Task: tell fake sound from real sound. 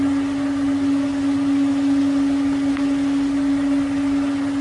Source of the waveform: real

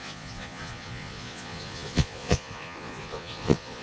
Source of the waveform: fake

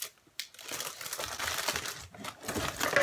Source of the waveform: real